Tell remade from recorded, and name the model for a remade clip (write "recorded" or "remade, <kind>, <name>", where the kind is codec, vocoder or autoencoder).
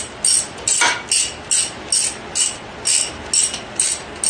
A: recorded